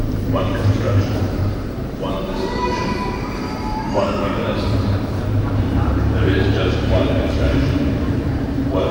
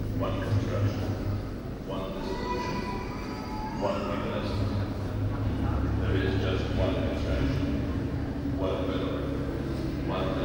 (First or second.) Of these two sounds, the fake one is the first